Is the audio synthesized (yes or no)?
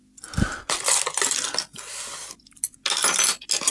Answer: no